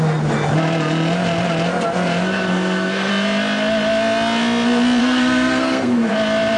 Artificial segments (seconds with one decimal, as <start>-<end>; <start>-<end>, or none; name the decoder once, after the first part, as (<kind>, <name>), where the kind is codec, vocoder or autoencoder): 2.3-3.1 (codec, SNAC); 5.0-6.1